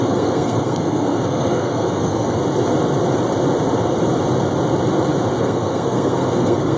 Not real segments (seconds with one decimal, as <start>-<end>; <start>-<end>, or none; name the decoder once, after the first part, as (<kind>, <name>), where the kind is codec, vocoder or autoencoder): 0.0-2.4 (codec, SNAC); 5.4-6.8